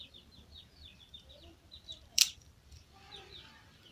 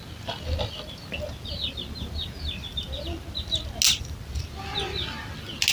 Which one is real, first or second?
second